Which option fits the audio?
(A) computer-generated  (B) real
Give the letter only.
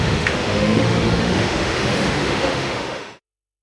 A